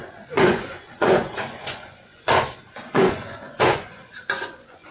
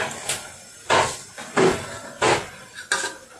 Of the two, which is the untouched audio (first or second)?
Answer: second